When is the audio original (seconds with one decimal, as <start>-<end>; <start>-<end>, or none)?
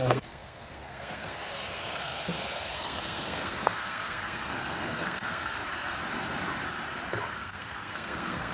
5.6-7.3